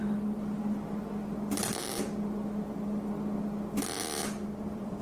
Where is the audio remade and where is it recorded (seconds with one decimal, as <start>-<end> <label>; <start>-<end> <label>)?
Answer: 0.0-4.2 recorded; 4.2-5.0 remade